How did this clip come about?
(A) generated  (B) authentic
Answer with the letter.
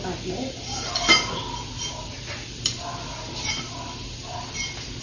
B